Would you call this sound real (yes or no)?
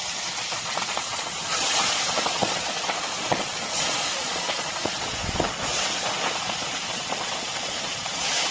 no